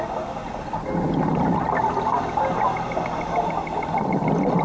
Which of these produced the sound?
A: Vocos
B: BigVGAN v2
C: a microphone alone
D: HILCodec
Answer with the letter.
C